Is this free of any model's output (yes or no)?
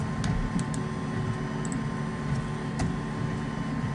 yes